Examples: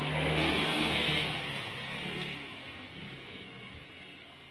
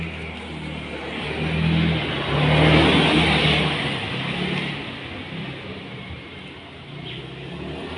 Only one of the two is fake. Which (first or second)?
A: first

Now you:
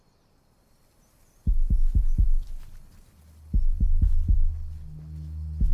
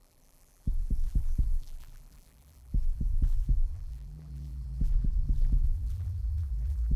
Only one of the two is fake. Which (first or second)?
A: second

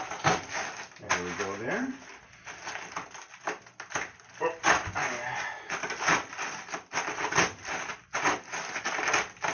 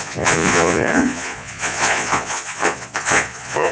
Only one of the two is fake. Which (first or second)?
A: second